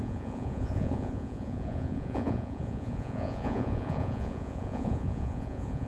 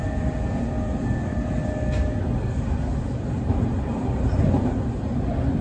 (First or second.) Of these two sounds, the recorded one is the second